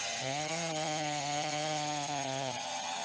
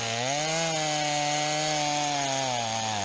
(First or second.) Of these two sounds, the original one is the second